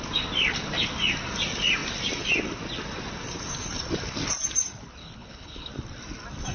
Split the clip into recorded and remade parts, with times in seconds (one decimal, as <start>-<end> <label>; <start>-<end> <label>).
0.0-5.0 recorded; 5.0-5.7 remade; 5.7-6.5 recorded